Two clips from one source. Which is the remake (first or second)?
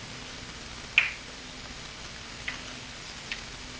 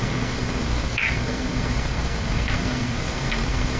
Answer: second